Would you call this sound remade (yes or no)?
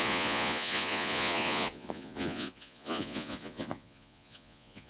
yes